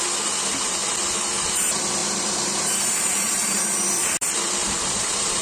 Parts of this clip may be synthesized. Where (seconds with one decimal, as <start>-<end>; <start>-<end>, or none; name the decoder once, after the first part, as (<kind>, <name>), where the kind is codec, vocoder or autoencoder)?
2.0-3.6 (vocoder, BigVGAN v2); 4.6-5.4